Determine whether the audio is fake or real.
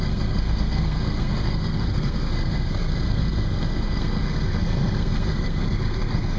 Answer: fake